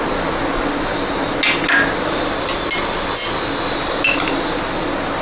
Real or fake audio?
real